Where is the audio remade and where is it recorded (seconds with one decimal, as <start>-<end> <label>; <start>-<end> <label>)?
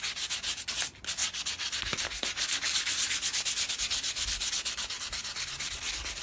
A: 0.0-6.2 recorded